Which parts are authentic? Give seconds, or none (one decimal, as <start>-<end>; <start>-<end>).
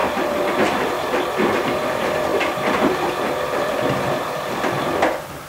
none